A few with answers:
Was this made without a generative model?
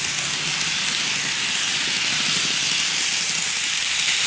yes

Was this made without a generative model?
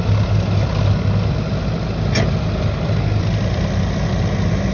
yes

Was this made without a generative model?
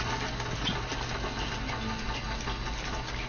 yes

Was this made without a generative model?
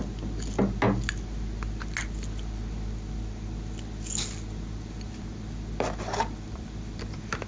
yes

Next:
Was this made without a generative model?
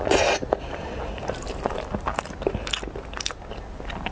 yes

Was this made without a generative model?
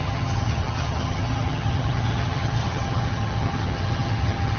no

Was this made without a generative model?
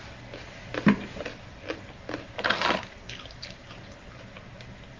yes